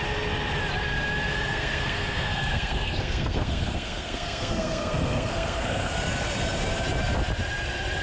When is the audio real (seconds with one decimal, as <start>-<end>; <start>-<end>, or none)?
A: 0.0-1.3; 5.9-8.0

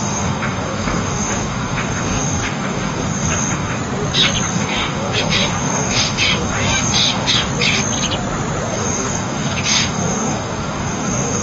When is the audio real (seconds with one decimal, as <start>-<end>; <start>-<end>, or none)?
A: 3.8-4.5; 7.5-8.7